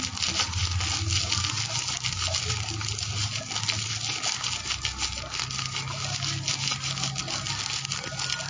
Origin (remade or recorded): recorded